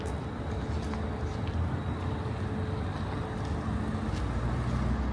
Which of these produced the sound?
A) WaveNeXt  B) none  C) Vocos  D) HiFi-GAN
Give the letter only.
B